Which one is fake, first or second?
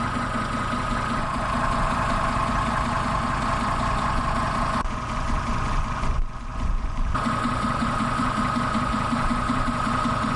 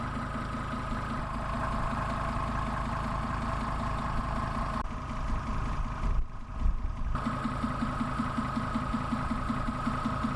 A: first